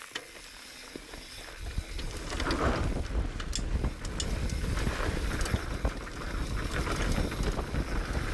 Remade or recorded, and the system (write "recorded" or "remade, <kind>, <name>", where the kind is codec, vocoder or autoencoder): recorded